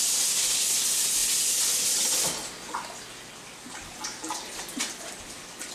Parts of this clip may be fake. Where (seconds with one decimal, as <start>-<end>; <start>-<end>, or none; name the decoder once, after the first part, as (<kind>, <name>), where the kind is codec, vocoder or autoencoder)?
none